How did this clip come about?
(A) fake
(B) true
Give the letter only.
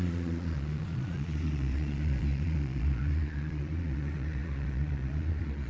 A